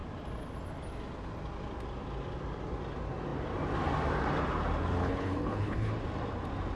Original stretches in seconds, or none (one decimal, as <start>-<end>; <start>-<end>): 0.0-5.0; 5.9-6.8